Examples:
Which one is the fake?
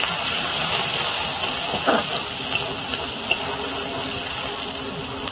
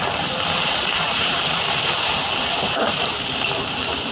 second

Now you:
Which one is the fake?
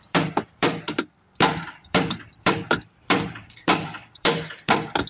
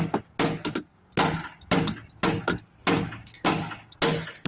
first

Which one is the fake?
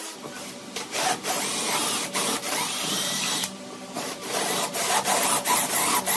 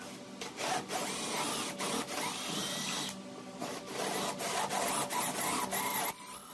first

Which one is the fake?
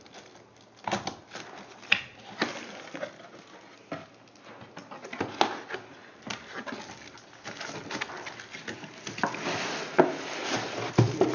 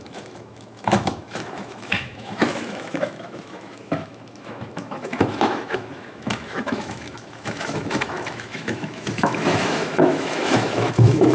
second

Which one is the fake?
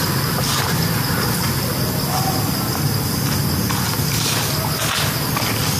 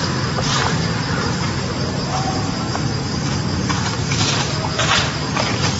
second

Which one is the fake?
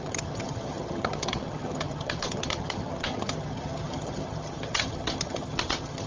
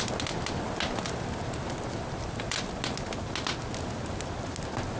first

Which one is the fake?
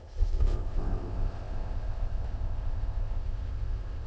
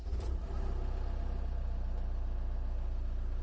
first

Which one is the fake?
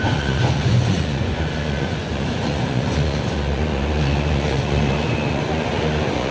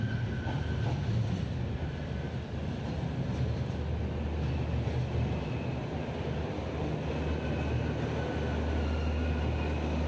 first